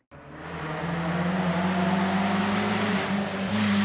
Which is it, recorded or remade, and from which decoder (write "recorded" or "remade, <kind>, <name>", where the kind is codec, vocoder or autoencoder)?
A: recorded